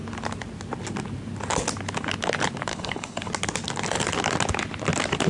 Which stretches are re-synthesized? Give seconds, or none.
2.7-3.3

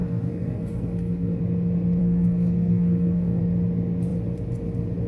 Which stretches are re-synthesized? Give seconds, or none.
0.0-1.4; 2.0-3.4

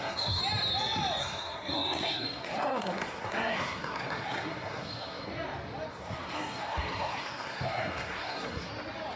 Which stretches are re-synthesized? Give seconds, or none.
0.0-0.4; 1.2-5.3; 5.9-8.7

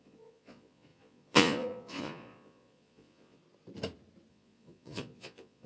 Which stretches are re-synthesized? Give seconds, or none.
0.0-3.4; 4.3-5.7

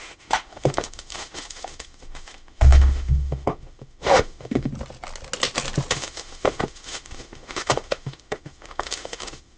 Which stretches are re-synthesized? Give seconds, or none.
0.0-4.7; 5.9-9.6

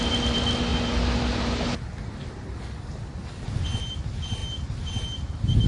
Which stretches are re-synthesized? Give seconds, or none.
0.0-0.7; 4.0-4.4

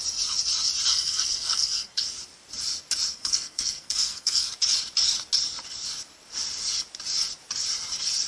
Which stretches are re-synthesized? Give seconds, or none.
0.9-2.0; 3.1-4.5

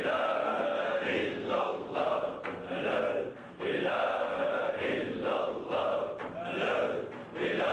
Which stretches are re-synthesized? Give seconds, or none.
0.4-4.5